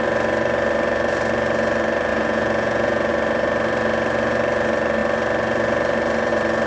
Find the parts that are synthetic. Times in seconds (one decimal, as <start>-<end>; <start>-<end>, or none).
2.1-3.1